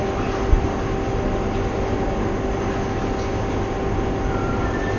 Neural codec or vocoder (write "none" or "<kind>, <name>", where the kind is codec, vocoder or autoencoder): none